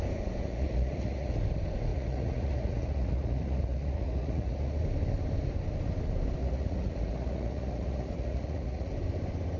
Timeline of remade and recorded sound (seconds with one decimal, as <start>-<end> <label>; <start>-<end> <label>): 0.0-0.4 recorded; 0.4-1.3 remade; 1.3-1.9 recorded; 1.9-4.8 remade; 4.8-6.4 recorded; 6.4-8.9 remade; 8.9-9.6 recorded